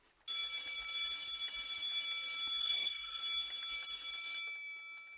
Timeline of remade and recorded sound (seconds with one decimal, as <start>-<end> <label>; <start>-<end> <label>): 0.0-2.6 recorded; 2.6-3.2 remade; 3.2-5.2 recorded

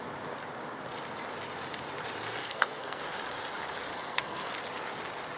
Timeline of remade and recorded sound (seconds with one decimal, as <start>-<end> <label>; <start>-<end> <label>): 0.0-2.4 recorded; 2.4-3.0 remade; 3.0-3.9 recorded; 3.9-4.5 remade; 4.5-5.4 recorded

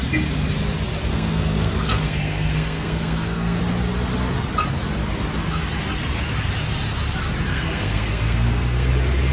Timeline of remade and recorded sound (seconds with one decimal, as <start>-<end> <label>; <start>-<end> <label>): 0.0-1.1 recorded; 1.1-3.6 remade; 3.6-7.5 recorded; 7.5-8.9 remade; 8.9-9.3 recorded

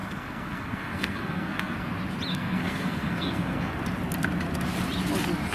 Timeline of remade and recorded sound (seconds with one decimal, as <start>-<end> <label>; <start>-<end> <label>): 0.0-1.9 remade; 1.9-2.3 recorded; 2.3-3.8 remade; 3.8-5.5 recorded

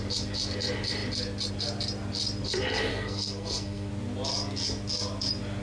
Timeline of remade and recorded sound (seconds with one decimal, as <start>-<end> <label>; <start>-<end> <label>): 0.0-2.9 recorded; 2.9-3.9 remade; 3.9-5.6 recorded